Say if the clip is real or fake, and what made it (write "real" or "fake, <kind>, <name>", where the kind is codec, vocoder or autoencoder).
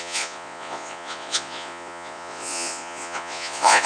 fake, vocoder, Vocos